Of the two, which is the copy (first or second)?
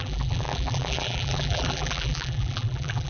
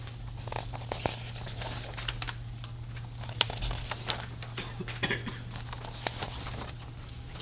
first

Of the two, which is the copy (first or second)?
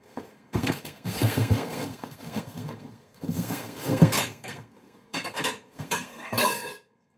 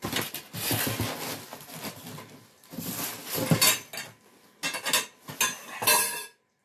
first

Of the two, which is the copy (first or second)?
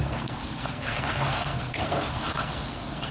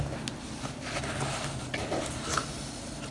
first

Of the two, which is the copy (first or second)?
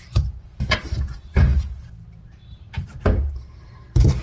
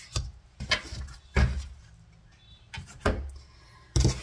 first